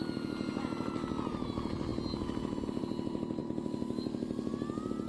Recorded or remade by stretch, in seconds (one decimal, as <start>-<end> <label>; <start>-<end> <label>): 0.0-5.1 recorded